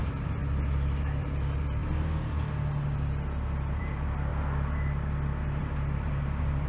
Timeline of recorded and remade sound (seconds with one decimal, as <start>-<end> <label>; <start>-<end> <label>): 0.0-0.4 remade; 0.4-1.0 recorded; 1.0-1.8 remade; 1.8-3.8 recorded; 3.8-4.3 remade; 4.3-5.6 recorded; 5.6-6.7 remade